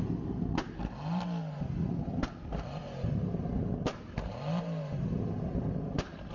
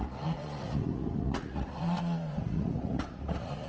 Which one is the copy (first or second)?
second